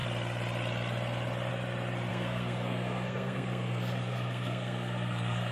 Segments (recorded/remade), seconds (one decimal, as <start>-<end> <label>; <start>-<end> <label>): 0.0-2.1 recorded; 2.1-5.5 remade